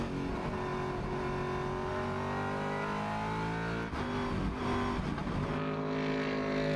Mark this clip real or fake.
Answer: real